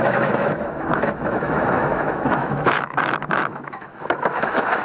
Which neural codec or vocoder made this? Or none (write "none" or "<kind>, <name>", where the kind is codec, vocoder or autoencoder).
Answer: autoencoder, DAC-VAE